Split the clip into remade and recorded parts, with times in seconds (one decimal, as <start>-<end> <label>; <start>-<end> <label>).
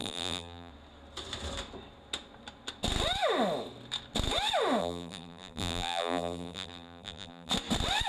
0.0-0.7 remade; 0.7-4.8 recorded; 4.8-7.5 remade; 7.5-8.1 recorded